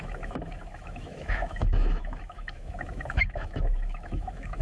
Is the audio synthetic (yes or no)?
yes